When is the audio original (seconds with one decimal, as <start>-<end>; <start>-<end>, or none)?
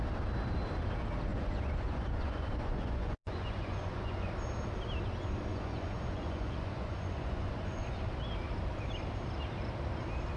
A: 0.0-1.3; 4.3-5.5; 8.0-10.4